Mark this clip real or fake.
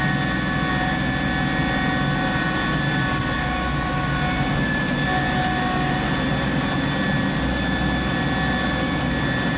real